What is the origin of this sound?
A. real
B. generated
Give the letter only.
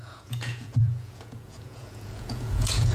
B